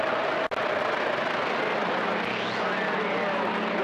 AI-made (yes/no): no